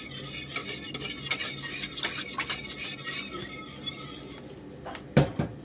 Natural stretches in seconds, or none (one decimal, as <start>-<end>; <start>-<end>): 0.0-5.6